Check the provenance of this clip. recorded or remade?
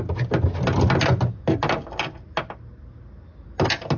recorded